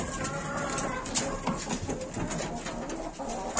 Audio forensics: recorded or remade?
recorded